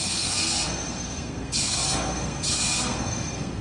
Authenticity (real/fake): fake